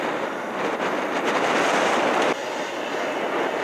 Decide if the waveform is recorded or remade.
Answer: recorded